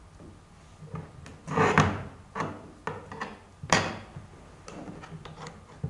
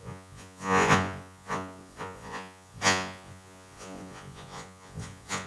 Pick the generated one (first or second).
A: second